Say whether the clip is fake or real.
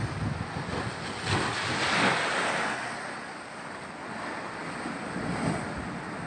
real